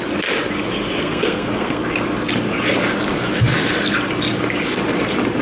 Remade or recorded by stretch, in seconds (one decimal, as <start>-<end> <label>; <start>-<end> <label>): 0.0-1.0 recorded; 1.0-1.8 remade; 1.8-5.4 recorded